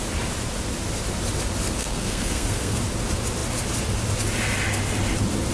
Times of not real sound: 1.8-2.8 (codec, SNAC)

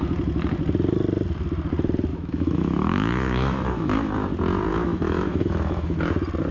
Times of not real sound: 2.1-4.1 (autoencoder, DAC-VAE); 4.7-6.0

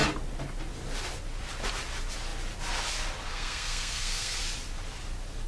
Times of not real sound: 3.3-4.4 (codec, SNAC)

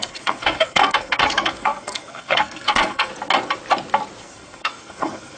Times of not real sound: 0.0-3.1 (codec, SNAC); 4.2-5.4

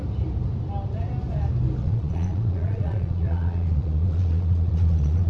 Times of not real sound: 1.8-5.3 (vocoder, Vocos)